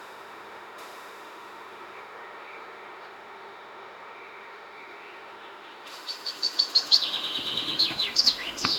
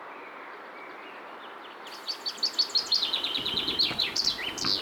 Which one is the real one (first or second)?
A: second